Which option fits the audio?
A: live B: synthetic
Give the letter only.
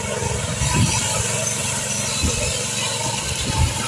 B